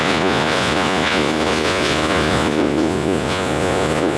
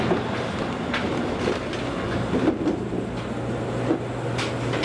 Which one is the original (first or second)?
second